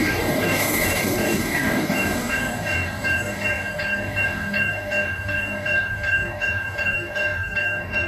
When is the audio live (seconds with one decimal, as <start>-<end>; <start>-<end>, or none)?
none